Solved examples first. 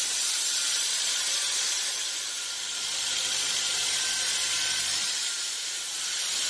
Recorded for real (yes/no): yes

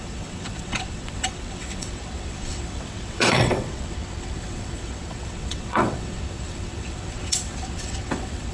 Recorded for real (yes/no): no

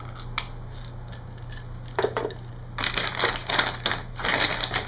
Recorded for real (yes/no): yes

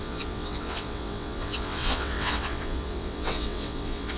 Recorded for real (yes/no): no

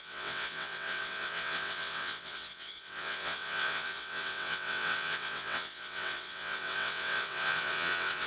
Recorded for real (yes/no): no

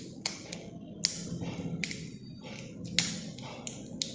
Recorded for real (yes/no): yes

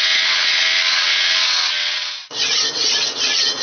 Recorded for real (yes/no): no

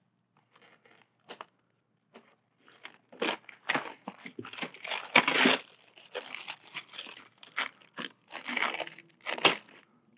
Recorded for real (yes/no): yes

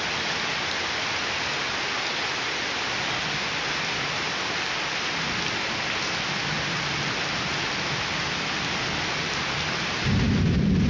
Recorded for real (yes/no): yes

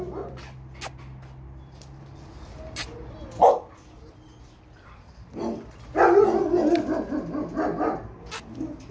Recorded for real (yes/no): yes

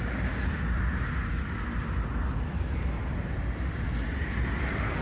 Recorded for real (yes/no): yes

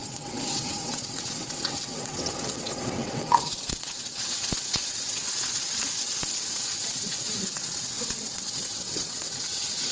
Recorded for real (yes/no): no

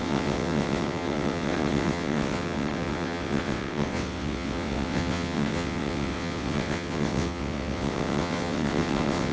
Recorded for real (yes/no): no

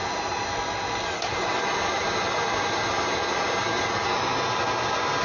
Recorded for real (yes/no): yes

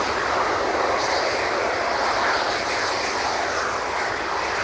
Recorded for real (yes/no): yes